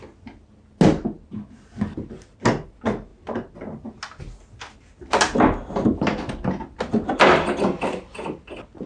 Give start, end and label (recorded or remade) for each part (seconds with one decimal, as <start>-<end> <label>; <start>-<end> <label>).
0.0-8.9 recorded